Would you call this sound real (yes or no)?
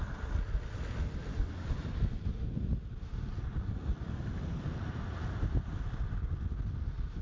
yes